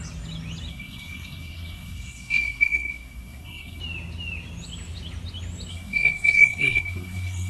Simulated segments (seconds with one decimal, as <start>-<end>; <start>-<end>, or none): 0.7-3.8; 5.7-7.5